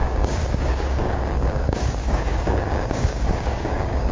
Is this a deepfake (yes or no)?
yes